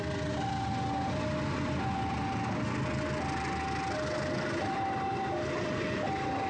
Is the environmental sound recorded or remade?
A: recorded